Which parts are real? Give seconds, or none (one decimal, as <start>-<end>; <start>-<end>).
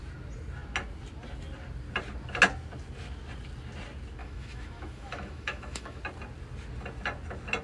0.0-4.2; 6.0-7.6